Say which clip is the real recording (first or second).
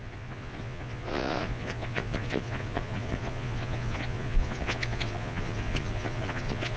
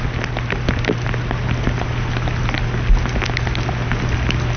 second